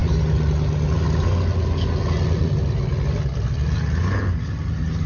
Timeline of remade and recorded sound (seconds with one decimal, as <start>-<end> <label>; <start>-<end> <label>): 0.0-5.1 recorded